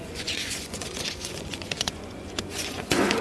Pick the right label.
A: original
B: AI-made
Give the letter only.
B